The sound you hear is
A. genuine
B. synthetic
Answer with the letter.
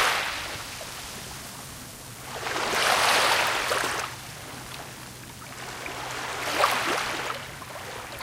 A